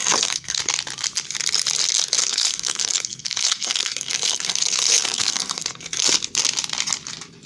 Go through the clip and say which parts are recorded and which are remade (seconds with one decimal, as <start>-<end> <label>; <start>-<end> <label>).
0.0-0.6 remade; 0.6-2.2 recorded; 2.2-6.0 remade; 6.0-7.5 recorded